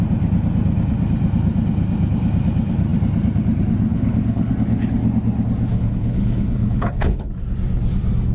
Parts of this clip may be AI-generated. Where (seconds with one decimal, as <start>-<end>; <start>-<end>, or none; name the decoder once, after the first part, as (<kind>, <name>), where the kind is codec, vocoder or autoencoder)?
3.9-4.5 (codec, HILCodec); 5.7-7.3